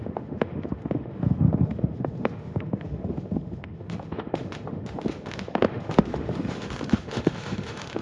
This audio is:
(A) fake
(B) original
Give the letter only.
A